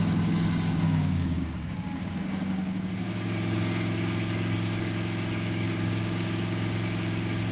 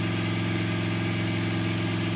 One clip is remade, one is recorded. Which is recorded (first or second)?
second